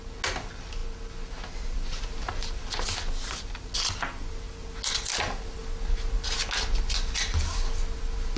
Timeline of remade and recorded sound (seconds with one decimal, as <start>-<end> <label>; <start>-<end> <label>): 0.0-8.4 recorded